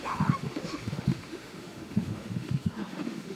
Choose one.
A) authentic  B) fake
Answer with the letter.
B